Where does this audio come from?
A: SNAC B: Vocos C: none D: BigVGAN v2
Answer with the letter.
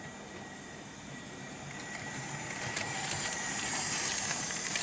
D